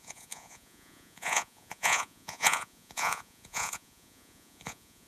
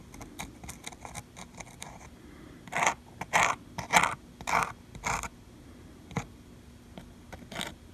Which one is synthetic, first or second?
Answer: first